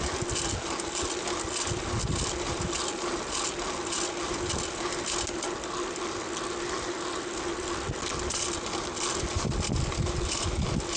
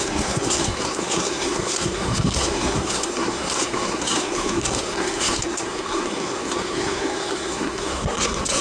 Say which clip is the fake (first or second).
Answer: second